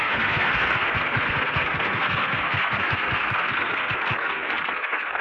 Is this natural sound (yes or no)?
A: no